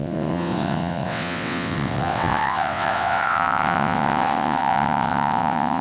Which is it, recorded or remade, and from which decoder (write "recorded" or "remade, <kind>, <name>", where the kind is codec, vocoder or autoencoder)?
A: remade, vocoder, WaveNeXt